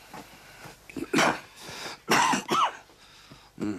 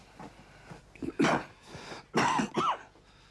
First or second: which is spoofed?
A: first